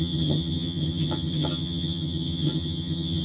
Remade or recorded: remade